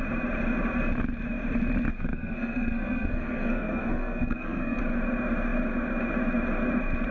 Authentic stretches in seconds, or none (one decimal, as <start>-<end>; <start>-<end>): 0.0-1.9; 4.8-7.1